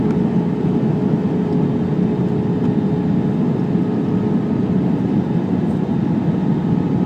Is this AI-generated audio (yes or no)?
no